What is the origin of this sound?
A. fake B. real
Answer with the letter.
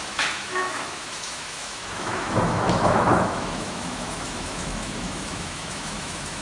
A